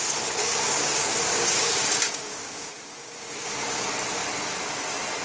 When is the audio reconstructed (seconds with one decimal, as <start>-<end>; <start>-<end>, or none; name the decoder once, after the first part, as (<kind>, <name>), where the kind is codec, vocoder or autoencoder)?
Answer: 0.4-3.5 (codec, DAC)